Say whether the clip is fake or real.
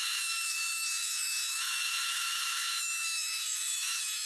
fake